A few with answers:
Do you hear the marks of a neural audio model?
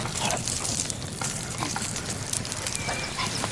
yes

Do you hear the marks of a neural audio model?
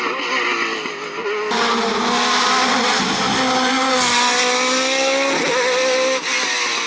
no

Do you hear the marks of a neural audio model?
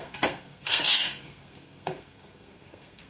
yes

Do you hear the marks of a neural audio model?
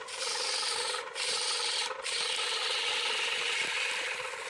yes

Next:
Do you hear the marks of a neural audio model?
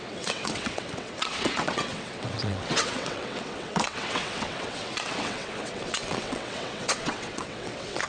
yes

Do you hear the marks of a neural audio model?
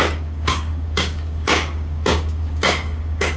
yes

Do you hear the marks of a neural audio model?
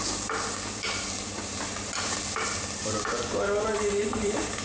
yes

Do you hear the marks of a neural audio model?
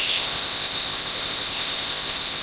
yes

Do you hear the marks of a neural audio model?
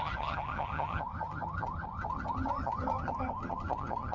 yes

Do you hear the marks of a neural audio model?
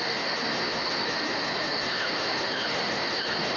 yes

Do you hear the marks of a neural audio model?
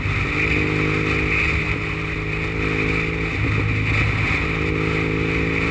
no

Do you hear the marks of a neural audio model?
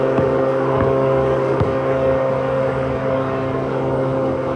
yes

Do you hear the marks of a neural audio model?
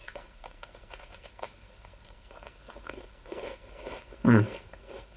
yes